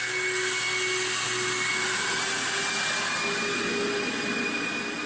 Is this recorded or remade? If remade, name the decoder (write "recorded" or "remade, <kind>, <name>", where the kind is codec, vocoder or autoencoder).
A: recorded